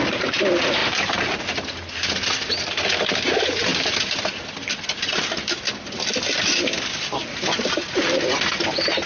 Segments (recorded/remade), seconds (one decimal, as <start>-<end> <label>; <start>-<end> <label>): 0.0-0.8 recorded; 0.8-1.4 remade; 1.4-7.2 recorded; 7.2-8.5 remade; 8.5-9.1 recorded